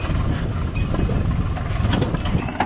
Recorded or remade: recorded